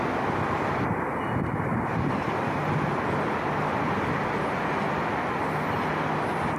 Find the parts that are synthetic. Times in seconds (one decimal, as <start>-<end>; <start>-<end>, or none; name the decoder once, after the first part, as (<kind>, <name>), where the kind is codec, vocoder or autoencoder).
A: none